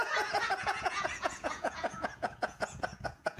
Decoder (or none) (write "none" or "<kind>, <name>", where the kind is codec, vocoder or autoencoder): vocoder, Vocos